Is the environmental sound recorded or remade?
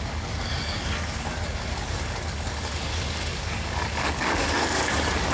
remade